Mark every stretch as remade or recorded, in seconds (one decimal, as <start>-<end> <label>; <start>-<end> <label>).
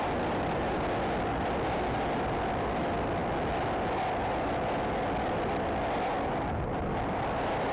0.0-7.7 recorded